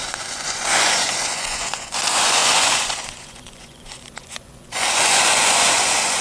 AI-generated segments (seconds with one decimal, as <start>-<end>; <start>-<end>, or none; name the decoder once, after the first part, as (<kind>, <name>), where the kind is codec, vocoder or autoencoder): 0.0-6.2 (vocoder, Vocos)

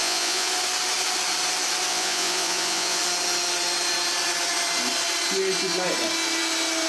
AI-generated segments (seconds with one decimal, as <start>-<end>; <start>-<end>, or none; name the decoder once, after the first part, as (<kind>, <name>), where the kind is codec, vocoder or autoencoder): 0.0-0.5 (vocoder, Vocos); 1.9-3.0

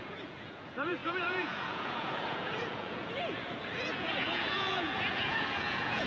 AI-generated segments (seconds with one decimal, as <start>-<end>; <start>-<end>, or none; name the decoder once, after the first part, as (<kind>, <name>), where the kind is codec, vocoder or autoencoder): 0.0-6.1 (vocoder, Vocos)

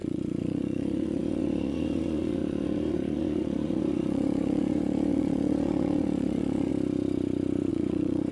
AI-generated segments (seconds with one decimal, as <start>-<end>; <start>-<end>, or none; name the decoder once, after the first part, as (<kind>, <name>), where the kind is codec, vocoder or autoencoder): 0.0-6.7 (vocoder, Vocos); 7.7-8.3